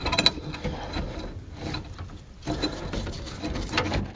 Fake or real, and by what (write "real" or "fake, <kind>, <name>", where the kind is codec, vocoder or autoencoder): real